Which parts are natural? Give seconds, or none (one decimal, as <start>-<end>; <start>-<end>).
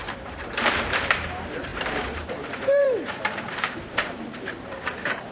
none